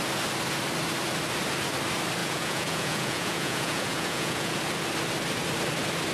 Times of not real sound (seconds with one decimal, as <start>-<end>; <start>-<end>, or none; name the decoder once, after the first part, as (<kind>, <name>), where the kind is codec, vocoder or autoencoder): 2.2-4.6 (vocoder, Vocos)